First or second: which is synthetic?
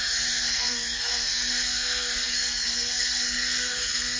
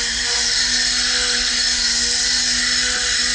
first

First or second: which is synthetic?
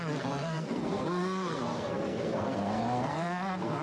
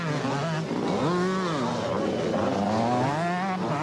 first